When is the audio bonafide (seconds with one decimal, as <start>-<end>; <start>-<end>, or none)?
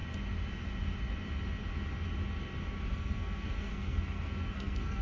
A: 0.0-2.9